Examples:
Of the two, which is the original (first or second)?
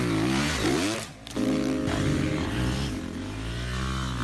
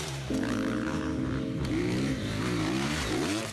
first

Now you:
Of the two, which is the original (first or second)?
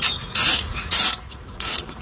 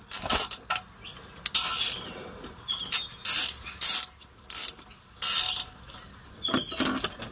second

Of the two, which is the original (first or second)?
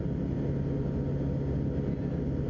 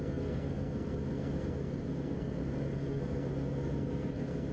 first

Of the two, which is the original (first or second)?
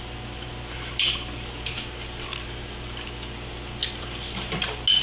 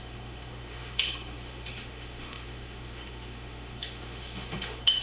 first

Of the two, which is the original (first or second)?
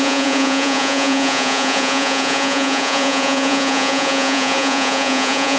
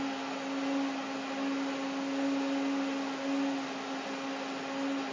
second